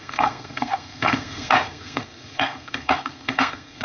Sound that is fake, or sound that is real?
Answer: fake